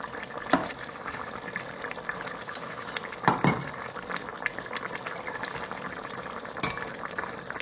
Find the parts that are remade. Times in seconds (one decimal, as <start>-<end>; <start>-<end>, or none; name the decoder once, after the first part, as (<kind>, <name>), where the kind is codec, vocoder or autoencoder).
0.6-1.3 (autoencoder, DAC-VAE); 2.4-2.9